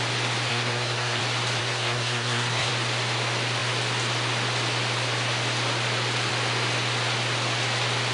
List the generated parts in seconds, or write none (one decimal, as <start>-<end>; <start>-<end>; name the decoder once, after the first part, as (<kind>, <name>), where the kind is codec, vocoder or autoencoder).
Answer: 0.5-1.2 (codec, SNAC); 1.6-2.7

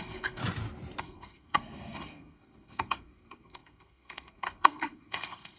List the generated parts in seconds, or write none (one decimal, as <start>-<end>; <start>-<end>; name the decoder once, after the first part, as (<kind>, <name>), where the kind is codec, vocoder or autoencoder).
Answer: 0.0-0.4 (codec, SNAC); 1.0-5.6